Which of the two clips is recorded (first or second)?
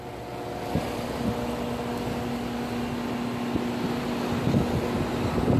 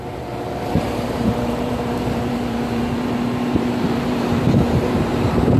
first